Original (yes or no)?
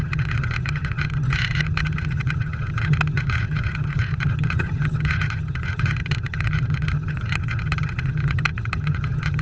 no